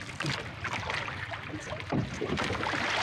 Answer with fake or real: real